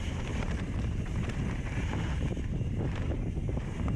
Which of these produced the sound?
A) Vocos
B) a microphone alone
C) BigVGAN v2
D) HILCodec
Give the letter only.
C